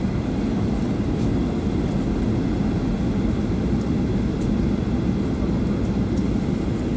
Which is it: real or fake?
real